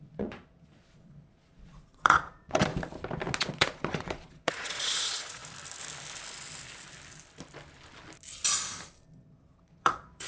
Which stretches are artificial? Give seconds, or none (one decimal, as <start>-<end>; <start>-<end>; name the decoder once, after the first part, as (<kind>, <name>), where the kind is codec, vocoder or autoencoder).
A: 0.0-2.7 (vocoder, Vocos); 3.4-5.4; 9.2-10.3